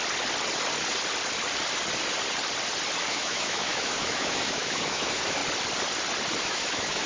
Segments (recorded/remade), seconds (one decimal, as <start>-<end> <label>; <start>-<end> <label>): 0.0-3.1 recorded; 3.1-5.4 remade; 5.4-6.4 recorded; 6.4-7.1 remade